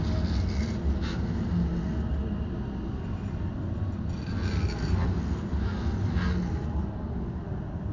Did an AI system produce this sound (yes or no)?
no